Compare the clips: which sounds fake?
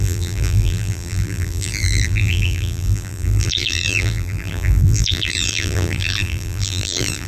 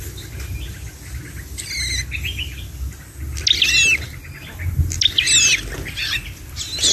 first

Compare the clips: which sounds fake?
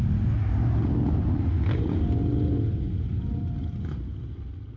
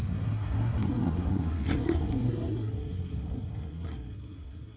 second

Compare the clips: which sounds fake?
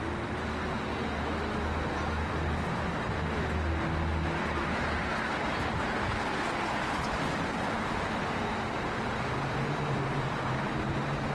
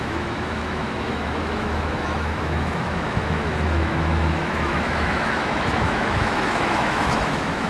second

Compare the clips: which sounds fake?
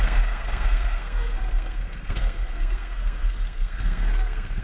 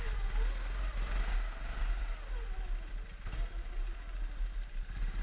first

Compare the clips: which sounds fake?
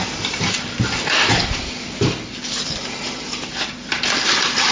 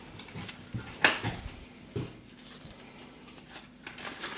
first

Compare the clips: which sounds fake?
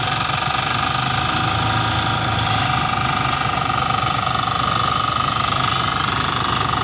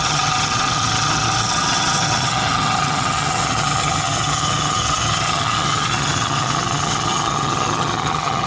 second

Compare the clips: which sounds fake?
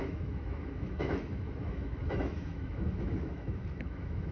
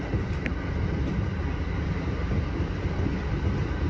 first